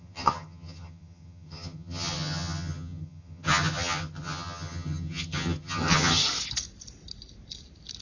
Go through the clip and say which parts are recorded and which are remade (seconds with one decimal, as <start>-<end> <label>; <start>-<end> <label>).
0.0-6.2 remade; 6.2-8.0 recorded